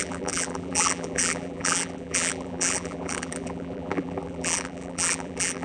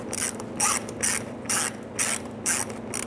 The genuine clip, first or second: second